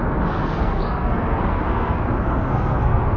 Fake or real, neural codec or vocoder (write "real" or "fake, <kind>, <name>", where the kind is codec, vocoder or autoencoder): fake, codec, SNAC